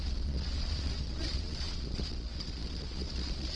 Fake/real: fake